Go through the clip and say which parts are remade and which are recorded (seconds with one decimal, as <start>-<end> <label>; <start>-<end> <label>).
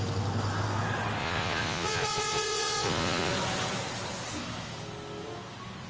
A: 0.0-1.2 recorded; 1.2-3.3 remade; 3.3-5.9 recorded